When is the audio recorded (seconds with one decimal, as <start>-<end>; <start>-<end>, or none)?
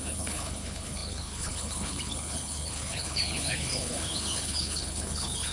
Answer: none